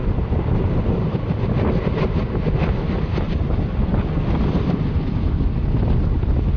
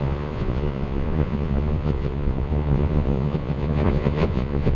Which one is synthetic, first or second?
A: second